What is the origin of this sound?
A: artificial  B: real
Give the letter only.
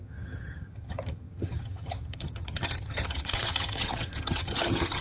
A